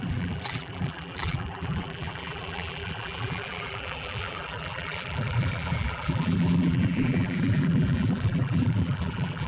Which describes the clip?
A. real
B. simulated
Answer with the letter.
B